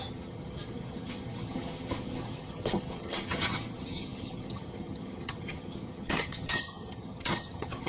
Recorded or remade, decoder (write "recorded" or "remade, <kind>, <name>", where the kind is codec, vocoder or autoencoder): remade, vocoder, HiFi-GAN